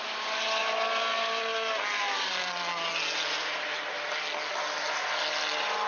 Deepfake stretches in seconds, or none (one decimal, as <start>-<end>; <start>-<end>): none